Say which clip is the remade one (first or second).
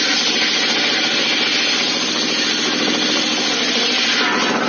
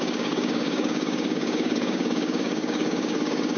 second